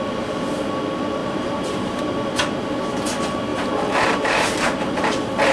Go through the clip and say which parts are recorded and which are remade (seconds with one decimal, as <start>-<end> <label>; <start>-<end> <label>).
0.0-1.2 recorded; 1.2-2.0 remade; 2.0-3.5 recorded; 3.5-5.1 remade; 5.1-5.5 recorded